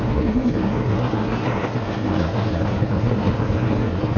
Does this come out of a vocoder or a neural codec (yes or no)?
yes